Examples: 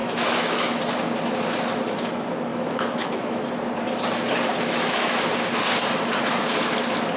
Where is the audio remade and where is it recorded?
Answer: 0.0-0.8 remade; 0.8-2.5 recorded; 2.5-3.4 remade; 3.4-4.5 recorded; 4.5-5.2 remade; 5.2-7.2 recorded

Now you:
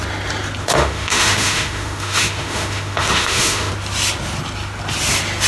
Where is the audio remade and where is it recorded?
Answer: 0.0-0.6 recorded; 0.6-3.7 remade; 3.7-5.5 recorded

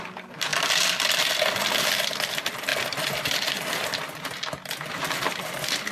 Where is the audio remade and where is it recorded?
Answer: 0.0-5.9 recorded

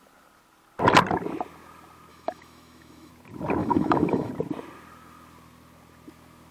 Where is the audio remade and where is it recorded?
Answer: 0.0-2.1 recorded; 2.1-3.1 remade; 3.1-3.6 recorded; 3.6-4.3 remade; 4.3-6.5 recorded

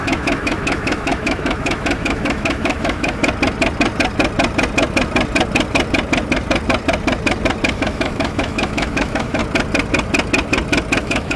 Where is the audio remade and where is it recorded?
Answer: 0.0-3.2 remade; 3.2-7.7 recorded; 7.7-9.4 remade; 9.4-11.0 recorded; 11.0-11.4 remade

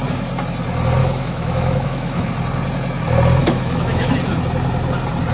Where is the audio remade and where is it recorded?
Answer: 0.0-1.0 recorded; 1.0-2.3 remade; 2.3-3.4 recorded; 3.4-4.1 remade; 4.1-5.3 recorded

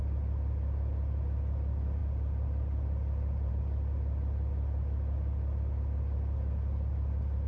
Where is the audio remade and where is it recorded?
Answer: 0.0-7.5 recorded

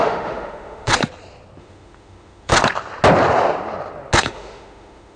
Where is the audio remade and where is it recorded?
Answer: 0.0-0.9 remade; 0.9-1.6 recorded; 1.6-2.5 remade; 2.5-4.2 recorded; 4.2-5.2 remade